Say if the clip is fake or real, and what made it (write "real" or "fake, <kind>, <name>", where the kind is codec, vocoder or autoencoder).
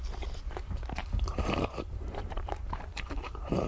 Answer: fake, vocoder, BigVGAN v2